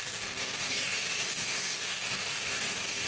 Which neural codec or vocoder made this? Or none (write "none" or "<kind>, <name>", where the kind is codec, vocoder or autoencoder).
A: codec, DAC